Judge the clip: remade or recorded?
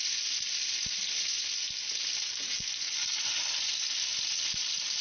recorded